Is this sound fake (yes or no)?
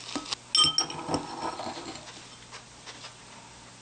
no